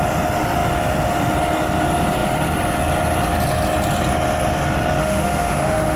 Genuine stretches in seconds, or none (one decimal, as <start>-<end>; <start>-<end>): 0.0-5.0